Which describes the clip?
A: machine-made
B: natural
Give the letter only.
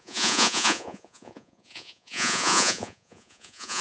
A